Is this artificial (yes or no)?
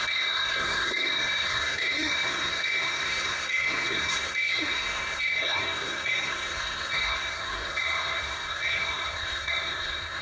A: yes